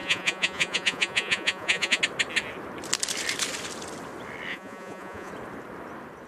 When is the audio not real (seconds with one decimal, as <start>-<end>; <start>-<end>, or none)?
0.0-2.0; 4.5-5.3